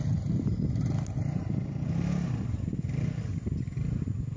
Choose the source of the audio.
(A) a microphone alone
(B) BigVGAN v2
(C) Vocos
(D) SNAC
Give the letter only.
A